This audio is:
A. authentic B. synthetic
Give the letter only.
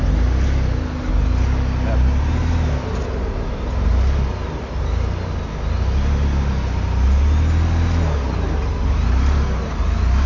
A